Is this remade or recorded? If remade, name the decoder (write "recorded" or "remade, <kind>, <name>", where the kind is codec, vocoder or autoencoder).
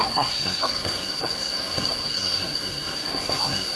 remade, codec, SNAC